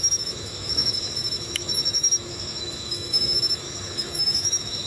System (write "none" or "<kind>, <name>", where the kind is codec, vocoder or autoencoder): autoencoder, DAC-VAE